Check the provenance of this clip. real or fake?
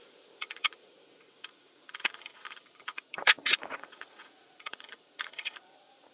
fake